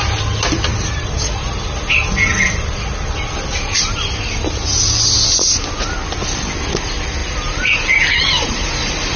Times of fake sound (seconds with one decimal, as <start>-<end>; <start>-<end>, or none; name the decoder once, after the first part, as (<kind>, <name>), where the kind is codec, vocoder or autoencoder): 0.7-1.3 (vocoder, BigVGAN v2); 7.2-9.2